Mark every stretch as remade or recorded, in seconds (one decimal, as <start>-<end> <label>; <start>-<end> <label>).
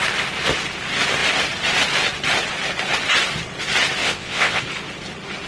0.0-4.0 recorded; 4.0-4.6 remade; 4.6-5.5 recorded